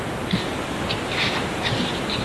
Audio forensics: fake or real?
real